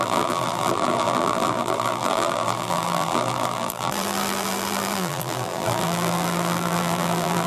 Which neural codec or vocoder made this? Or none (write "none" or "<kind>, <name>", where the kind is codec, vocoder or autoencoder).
vocoder, BigVGAN v2